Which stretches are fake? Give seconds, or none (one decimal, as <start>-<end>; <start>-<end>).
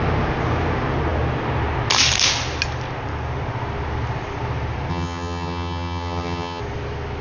4.9-6.6